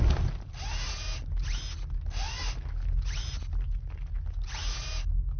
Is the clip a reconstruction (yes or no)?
no